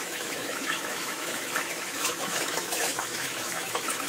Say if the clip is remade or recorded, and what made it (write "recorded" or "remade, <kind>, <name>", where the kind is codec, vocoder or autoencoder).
remade, autoencoder, DAC-VAE